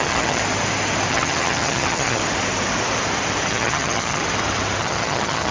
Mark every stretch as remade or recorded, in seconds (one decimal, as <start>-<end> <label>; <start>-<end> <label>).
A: 0.0-0.4 remade; 0.4-1.1 recorded; 1.1-2.2 remade; 2.2-3.5 recorded; 3.5-4.2 remade; 4.2-4.8 recorded; 4.8-5.5 remade